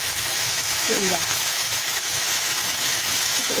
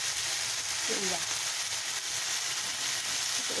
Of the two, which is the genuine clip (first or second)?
second